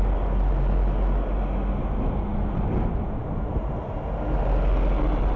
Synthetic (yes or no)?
no